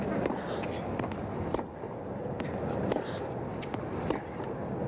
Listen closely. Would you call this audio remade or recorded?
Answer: recorded